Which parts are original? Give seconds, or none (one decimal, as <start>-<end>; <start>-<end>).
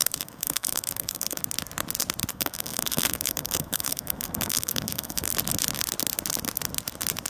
1.4-2.3; 5.3-7.3